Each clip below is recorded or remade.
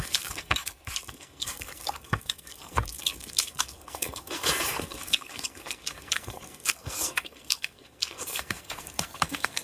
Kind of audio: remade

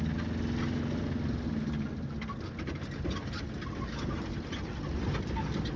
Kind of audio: recorded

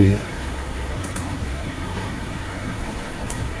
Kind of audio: remade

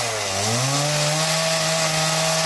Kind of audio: recorded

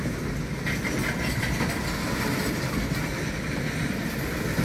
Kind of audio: recorded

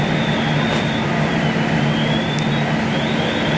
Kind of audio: recorded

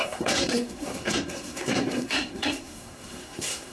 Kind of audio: remade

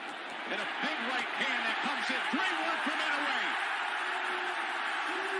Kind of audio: recorded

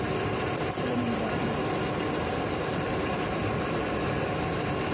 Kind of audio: recorded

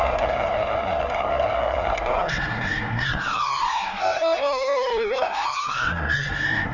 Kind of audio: remade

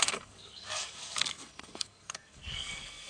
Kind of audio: remade